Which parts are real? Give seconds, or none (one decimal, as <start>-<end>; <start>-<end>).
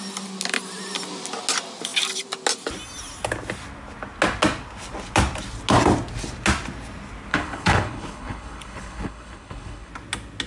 0.0-7.3; 9.9-10.5